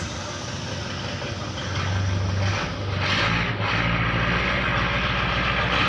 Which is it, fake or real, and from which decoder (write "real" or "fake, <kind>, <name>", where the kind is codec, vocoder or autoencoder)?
real